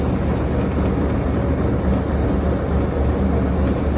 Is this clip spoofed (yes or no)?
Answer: no